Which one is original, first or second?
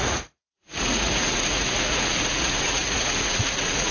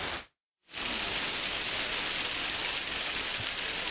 second